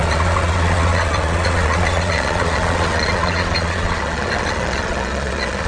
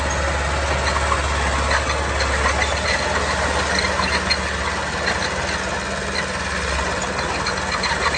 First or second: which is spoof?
first